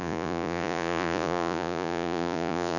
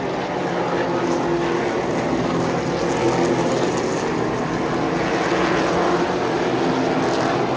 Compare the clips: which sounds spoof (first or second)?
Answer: first